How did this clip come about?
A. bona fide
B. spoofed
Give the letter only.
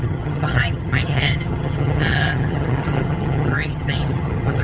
B